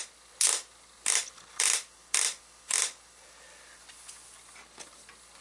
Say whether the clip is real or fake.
real